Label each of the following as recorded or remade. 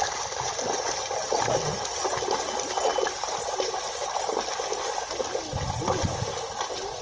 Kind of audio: recorded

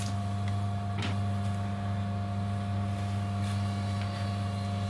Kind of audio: recorded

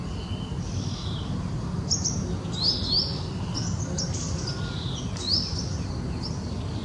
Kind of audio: recorded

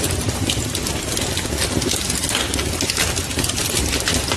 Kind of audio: recorded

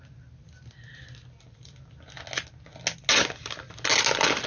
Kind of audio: recorded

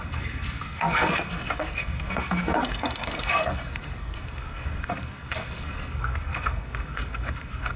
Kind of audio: remade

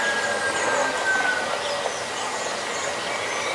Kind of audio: recorded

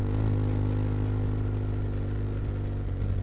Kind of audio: recorded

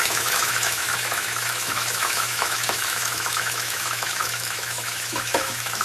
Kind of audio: remade